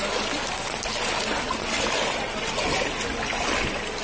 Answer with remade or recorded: recorded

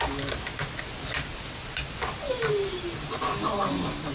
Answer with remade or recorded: recorded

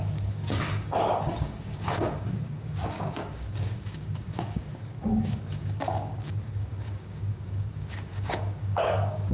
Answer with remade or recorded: remade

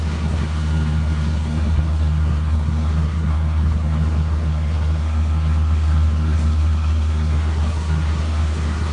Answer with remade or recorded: remade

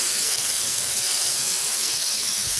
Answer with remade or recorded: remade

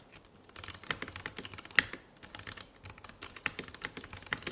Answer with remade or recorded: recorded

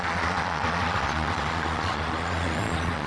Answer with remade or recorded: remade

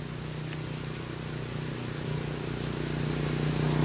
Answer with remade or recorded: recorded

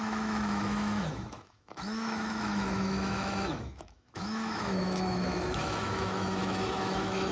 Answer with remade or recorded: remade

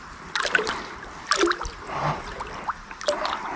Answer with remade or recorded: recorded